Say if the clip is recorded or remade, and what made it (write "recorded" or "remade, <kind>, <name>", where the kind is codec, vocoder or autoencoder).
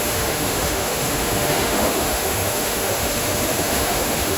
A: remade, autoencoder, DAC-VAE